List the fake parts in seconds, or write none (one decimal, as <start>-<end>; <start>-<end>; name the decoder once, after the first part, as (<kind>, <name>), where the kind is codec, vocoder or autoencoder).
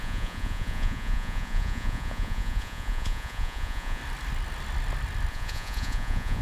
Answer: 0.0-4.0 (vocoder, Vocos); 5.3-6.4